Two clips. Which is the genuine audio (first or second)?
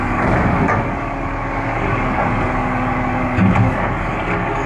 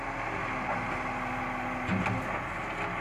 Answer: second